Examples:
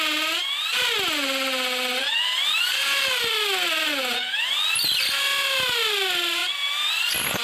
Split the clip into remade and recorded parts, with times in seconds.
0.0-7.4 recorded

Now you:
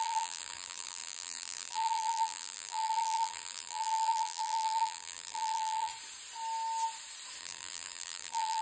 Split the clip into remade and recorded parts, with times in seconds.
0.0-5.9 remade; 5.9-7.4 recorded; 7.4-8.6 remade

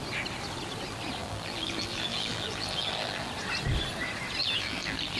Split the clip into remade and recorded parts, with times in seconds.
0.0-1.2 recorded; 1.2-3.3 remade; 3.3-4.4 recorded; 4.4-5.2 remade

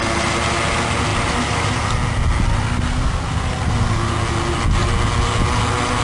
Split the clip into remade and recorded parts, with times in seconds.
0.0-6.0 recorded